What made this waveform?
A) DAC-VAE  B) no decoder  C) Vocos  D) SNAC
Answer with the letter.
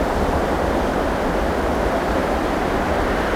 B